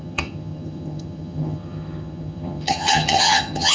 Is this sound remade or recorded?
remade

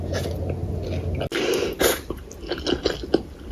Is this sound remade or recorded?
recorded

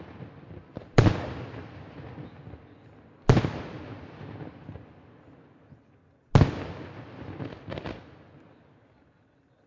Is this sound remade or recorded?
recorded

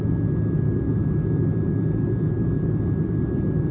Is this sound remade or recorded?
recorded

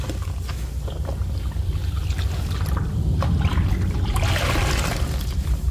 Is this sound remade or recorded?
recorded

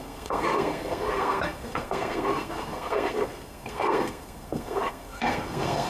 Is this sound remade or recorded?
remade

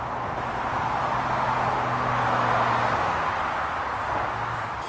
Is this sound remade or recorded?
recorded